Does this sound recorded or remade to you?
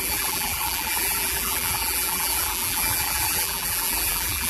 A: remade